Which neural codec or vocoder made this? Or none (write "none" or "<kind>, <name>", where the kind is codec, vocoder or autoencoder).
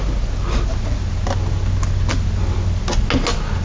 none